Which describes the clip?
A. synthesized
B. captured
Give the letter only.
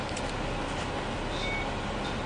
B